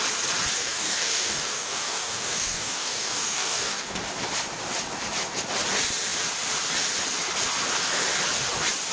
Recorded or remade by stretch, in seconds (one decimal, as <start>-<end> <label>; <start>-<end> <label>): 0.0-0.6 recorded; 0.6-4.0 remade; 4.0-8.9 recorded